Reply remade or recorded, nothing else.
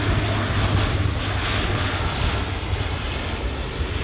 recorded